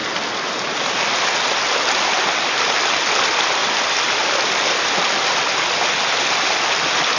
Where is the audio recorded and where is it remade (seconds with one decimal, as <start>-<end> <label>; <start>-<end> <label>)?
0.0-3.6 recorded; 3.6-5.8 remade; 5.8-7.2 recorded